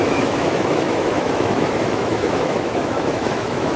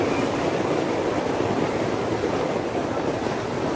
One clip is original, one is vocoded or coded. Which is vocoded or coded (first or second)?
first